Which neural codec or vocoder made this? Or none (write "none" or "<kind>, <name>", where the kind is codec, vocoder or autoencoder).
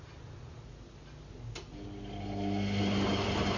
none